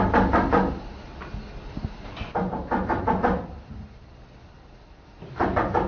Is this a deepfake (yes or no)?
no